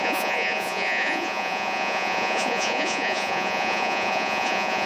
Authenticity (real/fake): fake